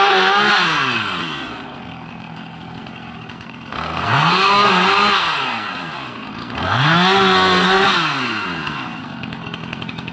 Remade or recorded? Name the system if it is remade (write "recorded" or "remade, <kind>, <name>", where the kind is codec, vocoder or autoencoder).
remade, codec, SNAC